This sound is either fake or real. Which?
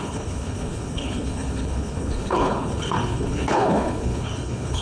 fake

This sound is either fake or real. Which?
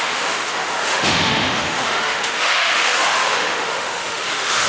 fake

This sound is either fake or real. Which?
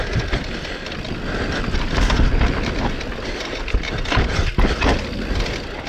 real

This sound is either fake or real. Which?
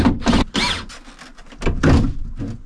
real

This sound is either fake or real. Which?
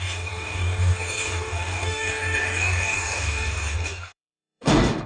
fake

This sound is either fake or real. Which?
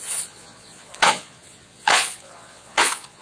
fake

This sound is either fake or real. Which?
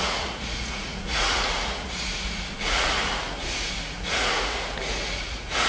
fake